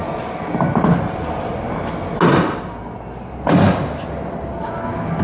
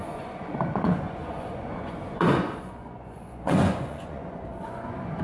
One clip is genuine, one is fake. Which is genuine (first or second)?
first